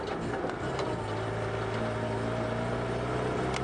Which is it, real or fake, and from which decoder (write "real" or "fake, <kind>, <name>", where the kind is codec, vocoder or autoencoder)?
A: real